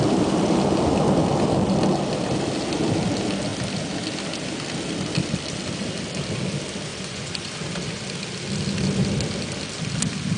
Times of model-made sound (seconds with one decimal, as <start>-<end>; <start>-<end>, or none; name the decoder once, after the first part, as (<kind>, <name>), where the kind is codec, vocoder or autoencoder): 6.9-7.5 (vocoder, Vocos)